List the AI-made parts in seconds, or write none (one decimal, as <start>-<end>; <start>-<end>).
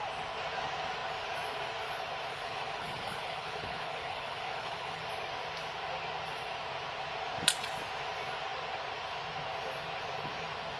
2.3-5.0